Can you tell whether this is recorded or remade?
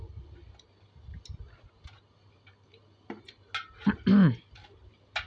recorded